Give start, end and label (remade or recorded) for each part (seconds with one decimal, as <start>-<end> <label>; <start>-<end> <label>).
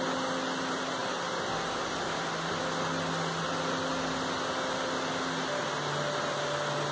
0.0-6.9 recorded